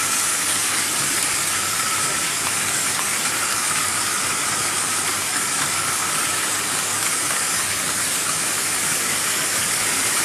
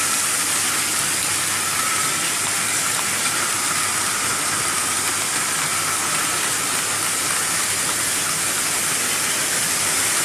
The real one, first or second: second